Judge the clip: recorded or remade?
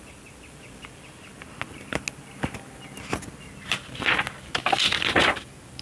recorded